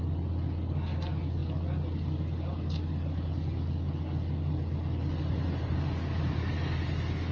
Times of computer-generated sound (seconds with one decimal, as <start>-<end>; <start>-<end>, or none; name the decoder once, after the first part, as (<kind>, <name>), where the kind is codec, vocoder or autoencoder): none